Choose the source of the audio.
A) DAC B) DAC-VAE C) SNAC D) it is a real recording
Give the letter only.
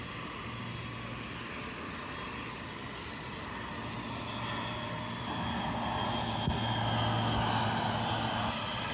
D